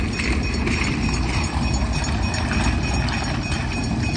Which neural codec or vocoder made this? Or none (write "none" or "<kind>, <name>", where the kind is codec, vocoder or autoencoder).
none